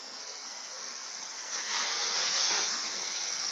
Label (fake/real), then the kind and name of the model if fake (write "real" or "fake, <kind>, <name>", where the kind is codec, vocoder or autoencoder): fake, codec, SNAC